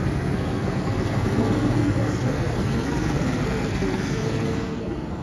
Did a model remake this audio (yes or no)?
yes